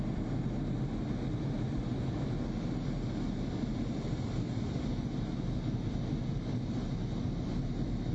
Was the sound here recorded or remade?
recorded